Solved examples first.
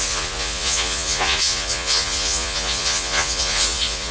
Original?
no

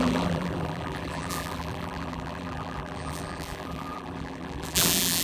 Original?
no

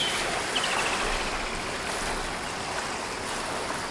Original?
yes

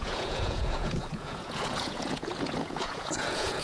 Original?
no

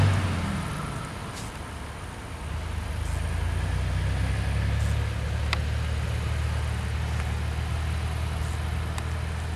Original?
yes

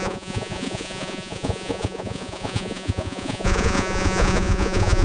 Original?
no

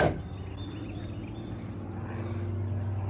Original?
yes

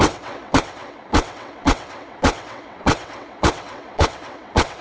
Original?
no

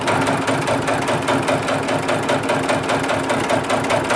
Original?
yes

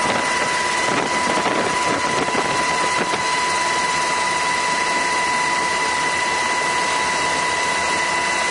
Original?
yes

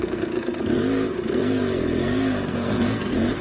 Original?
no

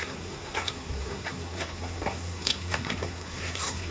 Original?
no